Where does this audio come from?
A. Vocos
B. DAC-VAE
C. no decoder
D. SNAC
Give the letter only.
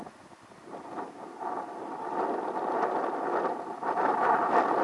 C